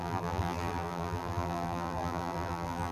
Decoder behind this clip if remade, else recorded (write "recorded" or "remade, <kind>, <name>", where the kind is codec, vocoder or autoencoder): remade, vocoder, BigVGAN v2